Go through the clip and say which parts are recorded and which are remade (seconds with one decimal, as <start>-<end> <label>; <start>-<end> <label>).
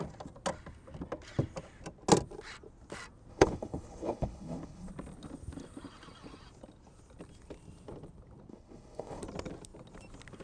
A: 0.0-3.3 recorded; 3.3-4.9 remade; 4.9-8.5 recorded; 8.5-9.2 remade; 9.2-10.4 recorded